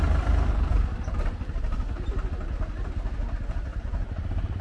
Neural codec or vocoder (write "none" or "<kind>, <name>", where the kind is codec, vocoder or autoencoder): vocoder, BigVGAN v2